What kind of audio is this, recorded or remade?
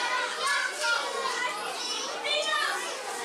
recorded